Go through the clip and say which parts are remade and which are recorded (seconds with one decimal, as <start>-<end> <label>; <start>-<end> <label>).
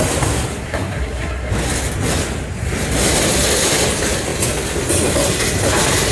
0.0-0.5 recorded; 0.5-1.5 remade; 1.5-6.1 recorded